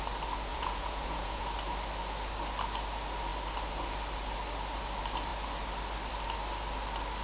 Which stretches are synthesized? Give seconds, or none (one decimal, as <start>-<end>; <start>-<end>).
0.5-1.4